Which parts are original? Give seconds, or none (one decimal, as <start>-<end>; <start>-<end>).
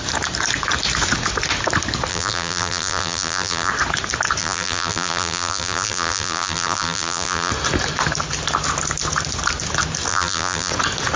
0.0-2.1; 3.7-4.4; 7.5-10.1; 10.7-11.2